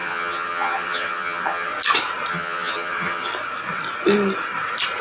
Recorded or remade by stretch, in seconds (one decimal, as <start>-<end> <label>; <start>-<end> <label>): 0.0-1.7 remade; 1.7-2.3 recorded; 2.3-3.3 remade; 3.3-5.0 recorded